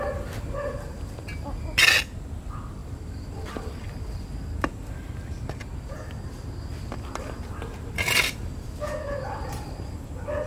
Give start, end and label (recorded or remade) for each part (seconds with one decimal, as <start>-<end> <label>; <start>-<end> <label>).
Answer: 0.0-2.8 recorded; 2.8-5.1 remade; 5.1-6.7 recorded; 6.7-10.5 remade